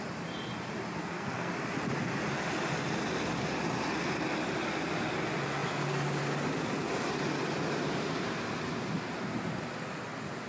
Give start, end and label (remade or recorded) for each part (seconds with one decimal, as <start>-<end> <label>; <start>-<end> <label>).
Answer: 0.0-1.0 recorded; 1.0-1.5 remade; 1.5-10.5 recorded